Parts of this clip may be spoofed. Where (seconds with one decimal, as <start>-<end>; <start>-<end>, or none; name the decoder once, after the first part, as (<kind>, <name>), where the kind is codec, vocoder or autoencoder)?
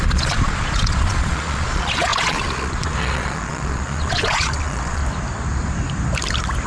0.0-5.0 (vocoder, Vocos)